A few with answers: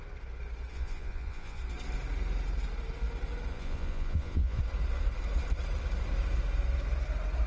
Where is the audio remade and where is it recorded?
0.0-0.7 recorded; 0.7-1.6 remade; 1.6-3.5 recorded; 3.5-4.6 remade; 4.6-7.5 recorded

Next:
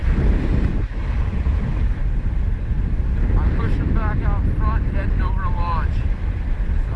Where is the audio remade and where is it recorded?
0.0-7.0 recorded

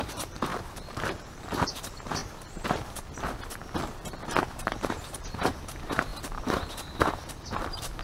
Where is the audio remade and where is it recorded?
0.0-0.5 remade; 0.5-1.3 recorded; 1.3-2.2 remade; 2.2-4.5 recorded; 4.5-8.0 remade